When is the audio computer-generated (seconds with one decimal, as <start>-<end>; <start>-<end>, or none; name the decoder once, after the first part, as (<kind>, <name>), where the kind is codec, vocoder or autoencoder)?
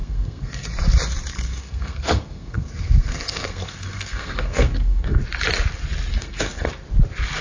0.0-0.7 (codec, SNAC); 1.3-5.2; 6.1-6.7